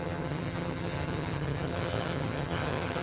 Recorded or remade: remade